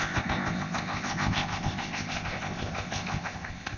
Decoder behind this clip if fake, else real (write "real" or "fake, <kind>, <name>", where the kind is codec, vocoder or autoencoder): fake, codec, ZipCodec